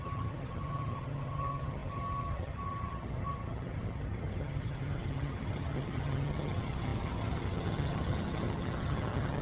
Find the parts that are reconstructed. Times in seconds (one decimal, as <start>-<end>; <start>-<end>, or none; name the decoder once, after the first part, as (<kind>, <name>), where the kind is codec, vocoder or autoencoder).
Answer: 0.0-9.4 (vocoder, HiFi-GAN)